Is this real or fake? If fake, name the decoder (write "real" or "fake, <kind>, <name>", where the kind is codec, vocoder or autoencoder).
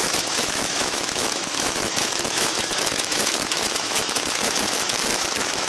fake, autoencoder, DAC-VAE